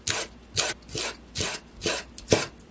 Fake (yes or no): no